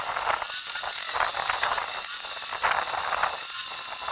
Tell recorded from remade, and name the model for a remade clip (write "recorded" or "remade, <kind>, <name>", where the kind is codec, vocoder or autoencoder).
recorded